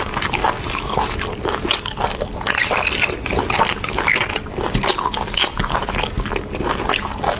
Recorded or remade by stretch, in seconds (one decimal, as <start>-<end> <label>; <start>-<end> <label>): 0.0-7.4 recorded